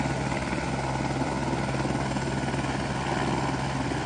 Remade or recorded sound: recorded